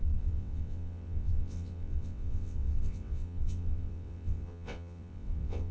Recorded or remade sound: remade